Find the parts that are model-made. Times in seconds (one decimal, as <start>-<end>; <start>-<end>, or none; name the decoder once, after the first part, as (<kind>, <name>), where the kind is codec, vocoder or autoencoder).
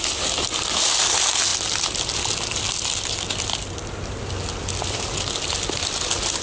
none